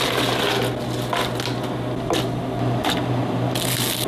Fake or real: real